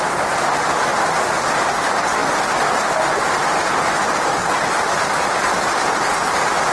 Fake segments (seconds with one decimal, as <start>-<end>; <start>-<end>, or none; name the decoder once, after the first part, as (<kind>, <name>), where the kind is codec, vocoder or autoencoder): 0.9-1.5 (vocoder, BigVGAN v2); 4.4-5.5